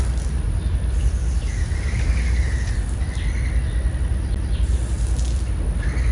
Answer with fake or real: real